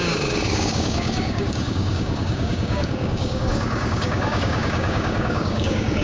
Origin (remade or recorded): remade